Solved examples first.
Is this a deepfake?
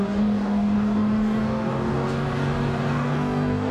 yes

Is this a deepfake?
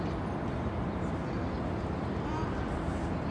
no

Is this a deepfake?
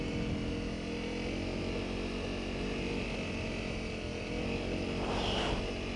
no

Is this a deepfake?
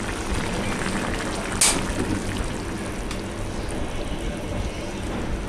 no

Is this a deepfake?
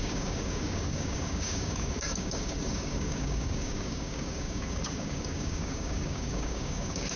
yes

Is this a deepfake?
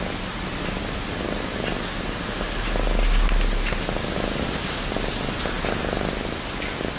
no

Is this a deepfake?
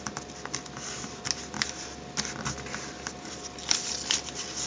no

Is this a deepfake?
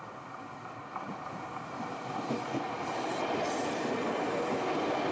no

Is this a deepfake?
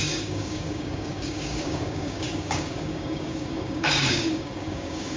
yes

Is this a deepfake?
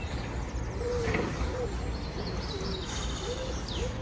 no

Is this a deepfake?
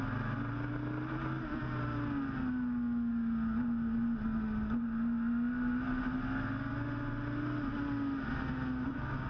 no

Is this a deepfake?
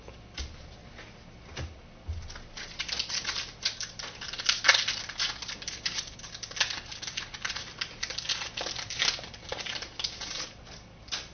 no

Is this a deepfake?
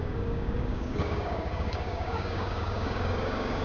yes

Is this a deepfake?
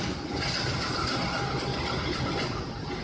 no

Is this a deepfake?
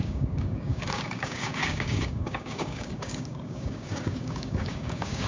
yes